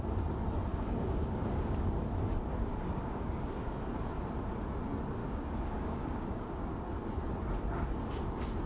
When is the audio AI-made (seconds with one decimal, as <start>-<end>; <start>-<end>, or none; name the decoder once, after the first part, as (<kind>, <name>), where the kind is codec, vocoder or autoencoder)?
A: 0.7-2.0 (codec, DAC); 2.7-3.7; 5.2-6.9